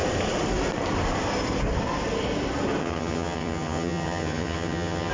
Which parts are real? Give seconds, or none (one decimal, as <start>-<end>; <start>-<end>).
0.0-2.8